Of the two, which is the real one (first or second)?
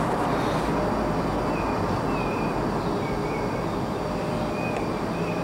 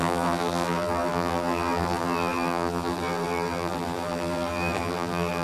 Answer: first